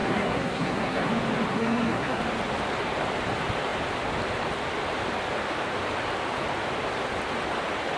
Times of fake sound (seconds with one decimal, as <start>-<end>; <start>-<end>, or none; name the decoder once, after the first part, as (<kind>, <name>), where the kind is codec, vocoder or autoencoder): 0.0-1.1 (codec, SNAC); 1.5-2.2